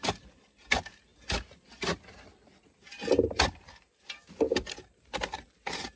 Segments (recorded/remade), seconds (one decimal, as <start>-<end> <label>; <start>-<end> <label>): 0.0-6.0 recorded